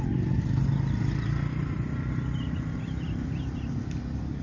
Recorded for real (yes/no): yes